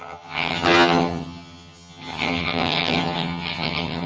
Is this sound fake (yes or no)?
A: yes